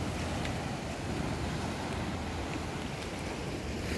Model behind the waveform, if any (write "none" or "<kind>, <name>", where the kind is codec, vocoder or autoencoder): none